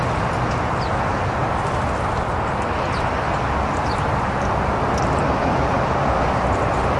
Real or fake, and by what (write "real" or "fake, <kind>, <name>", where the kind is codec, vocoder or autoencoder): real